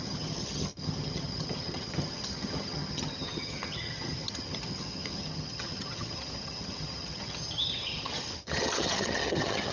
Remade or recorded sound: remade